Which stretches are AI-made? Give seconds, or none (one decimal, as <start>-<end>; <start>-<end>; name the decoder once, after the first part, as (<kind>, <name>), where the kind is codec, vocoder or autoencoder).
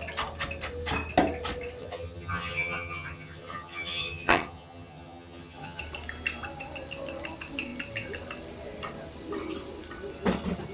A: 1.8-5.8 (vocoder, HiFi-GAN)